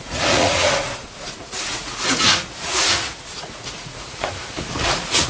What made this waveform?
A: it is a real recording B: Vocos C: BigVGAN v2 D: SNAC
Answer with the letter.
B